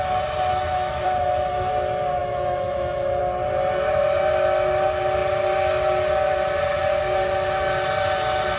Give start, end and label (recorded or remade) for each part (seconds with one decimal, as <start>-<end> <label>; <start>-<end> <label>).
0.0-0.5 recorded; 0.5-1.7 remade; 1.7-2.2 recorded; 2.2-3.2 remade; 3.2-8.6 recorded